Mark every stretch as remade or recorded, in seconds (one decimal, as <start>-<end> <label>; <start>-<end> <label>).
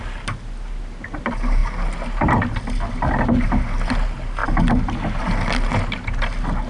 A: 0.0-6.7 recorded